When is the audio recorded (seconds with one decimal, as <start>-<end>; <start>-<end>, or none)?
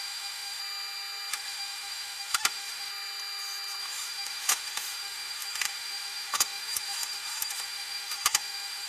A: 0.6-1.3; 2.9-3.8